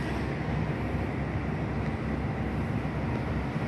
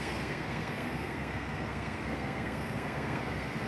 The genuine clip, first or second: first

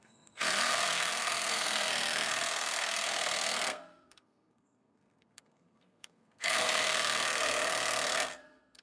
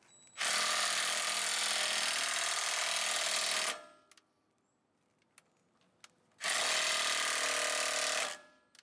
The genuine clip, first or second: second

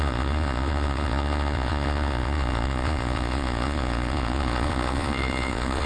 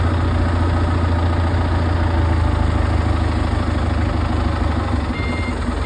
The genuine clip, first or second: second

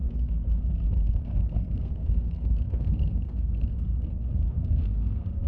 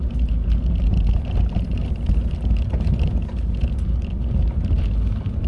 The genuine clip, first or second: second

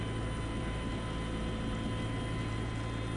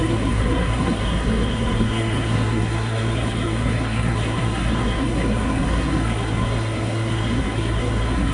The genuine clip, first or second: first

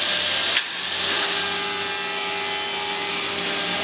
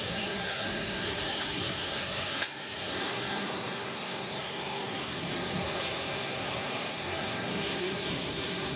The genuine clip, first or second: first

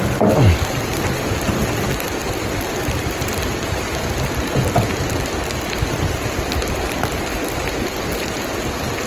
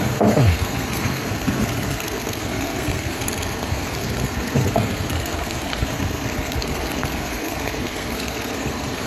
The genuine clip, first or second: first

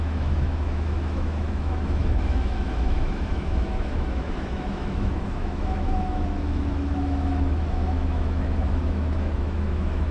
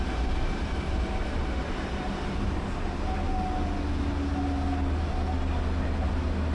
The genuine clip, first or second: second